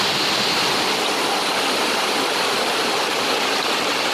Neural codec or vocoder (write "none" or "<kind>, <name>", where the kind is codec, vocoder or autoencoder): vocoder, BigVGAN v2